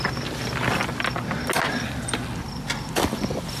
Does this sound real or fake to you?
real